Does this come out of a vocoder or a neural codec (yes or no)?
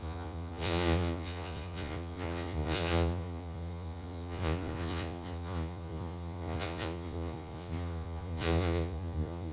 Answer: yes